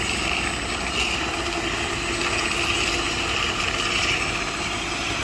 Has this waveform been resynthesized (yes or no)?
no